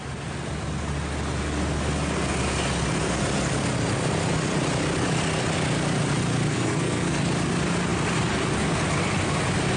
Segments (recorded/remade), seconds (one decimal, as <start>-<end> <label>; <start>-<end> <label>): 0.0-6.5 recorded; 6.5-7.2 remade; 7.2-9.8 recorded